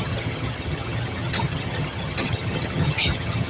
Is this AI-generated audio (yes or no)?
yes